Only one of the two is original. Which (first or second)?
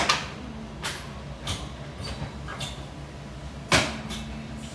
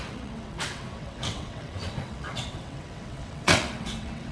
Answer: first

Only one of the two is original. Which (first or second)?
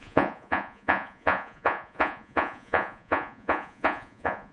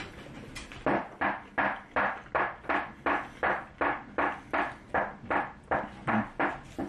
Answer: second